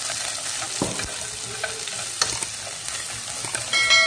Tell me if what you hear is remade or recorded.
recorded